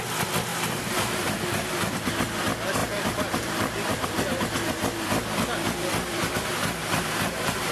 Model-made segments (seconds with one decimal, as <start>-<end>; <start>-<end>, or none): 0.5-1.4; 2.8-4.4; 6.8-7.7